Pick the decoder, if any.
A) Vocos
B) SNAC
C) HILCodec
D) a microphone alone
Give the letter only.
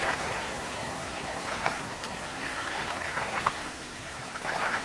B